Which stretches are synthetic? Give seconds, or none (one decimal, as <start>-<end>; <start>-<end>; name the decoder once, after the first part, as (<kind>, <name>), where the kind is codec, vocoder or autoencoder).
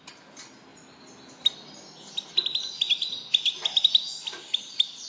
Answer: none